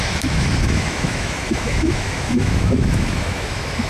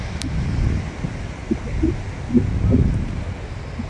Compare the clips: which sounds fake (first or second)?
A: first